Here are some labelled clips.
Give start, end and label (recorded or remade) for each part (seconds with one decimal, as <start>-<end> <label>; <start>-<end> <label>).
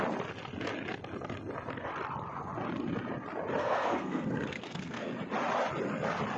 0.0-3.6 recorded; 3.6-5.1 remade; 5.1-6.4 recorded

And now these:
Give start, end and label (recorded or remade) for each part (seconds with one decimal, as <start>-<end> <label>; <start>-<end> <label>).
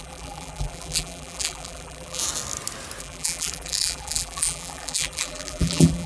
0.0-2.2 remade; 2.2-3.0 recorded; 3.0-6.1 remade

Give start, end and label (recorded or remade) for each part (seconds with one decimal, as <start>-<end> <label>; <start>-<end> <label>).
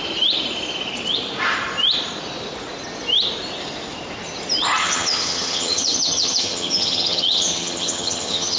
0.0-4.8 recorded; 4.8-8.6 remade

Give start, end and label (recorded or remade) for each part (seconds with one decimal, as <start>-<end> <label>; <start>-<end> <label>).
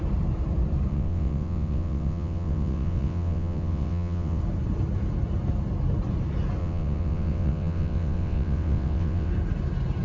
0.0-0.9 recorded; 0.9-4.4 remade; 4.4-6.6 recorded; 6.6-9.3 remade; 9.3-10.0 recorded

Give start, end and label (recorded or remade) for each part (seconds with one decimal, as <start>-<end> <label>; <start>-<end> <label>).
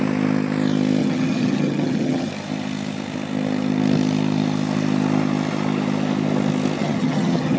0.0-1.0 recorded; 1.0-2.3 remade; 2.3-6.8 recorded; 6.8-7.6 remade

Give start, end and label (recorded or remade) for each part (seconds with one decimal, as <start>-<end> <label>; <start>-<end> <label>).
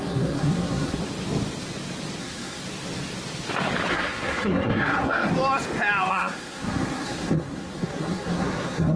0.0-1.0 remade; 1.0-2.2 recorded; 2.2-2.6 remade; 2.6-3.9 recorded; 3.9-5.3 remade; 5.3-6.1 recorded; 6.1-9.0 remade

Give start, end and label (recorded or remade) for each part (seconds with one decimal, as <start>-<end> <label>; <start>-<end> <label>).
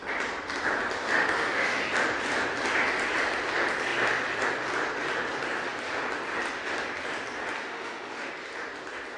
0.0-1.1 recorded; 1.1-1.8 remade; 1.8-7.6 recorded; 7.6-8.3 remade; 8.3-9.2 recorded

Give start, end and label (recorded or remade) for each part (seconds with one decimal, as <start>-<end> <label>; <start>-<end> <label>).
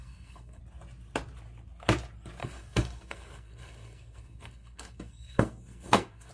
0.0-0.6 remade; 0.6-2.4 recorded; 2.4-6.3 remade